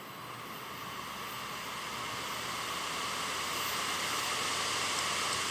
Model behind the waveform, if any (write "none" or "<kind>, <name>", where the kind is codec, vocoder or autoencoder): none